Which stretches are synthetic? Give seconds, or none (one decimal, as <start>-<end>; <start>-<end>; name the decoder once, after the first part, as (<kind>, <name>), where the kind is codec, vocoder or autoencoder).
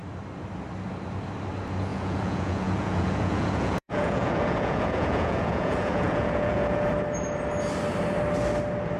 1.9-6.9 (vocoder, Vocos)